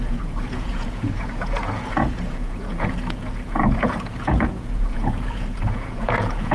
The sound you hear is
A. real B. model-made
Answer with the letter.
B